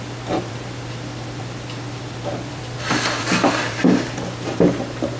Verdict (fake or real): fake